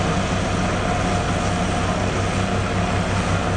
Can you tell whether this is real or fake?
real